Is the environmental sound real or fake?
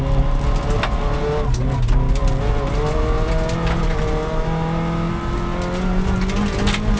real